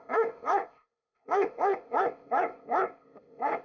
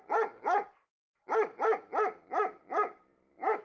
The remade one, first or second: first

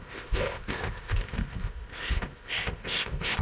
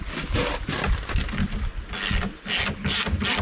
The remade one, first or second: first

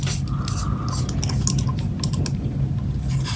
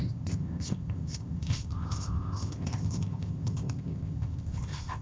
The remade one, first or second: second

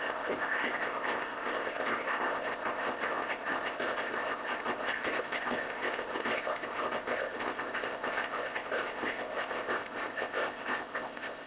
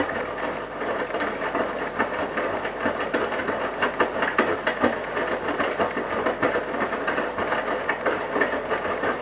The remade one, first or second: first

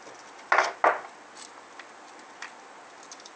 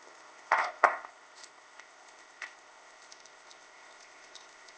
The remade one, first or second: second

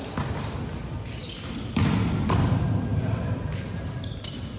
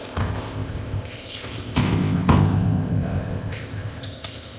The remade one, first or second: second